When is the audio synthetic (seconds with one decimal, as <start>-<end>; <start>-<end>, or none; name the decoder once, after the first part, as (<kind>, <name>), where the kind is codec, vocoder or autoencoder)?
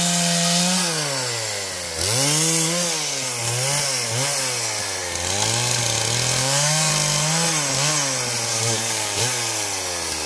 6.4-6.9 (codec, DAC); 8.5-9.2